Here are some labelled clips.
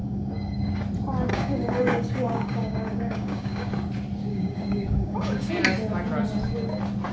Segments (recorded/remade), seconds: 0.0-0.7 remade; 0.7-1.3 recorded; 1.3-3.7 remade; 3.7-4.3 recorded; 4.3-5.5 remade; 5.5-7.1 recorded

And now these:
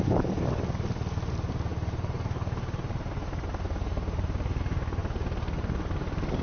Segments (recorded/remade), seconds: 0.0-1.7 recorded; 1.7-4.6 remade; 4.6-6.4 recorded

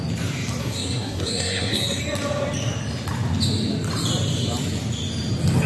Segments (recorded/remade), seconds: 0.0-0.6 recorded; 0.6-2.0 remade; 2.0-5.7 recorded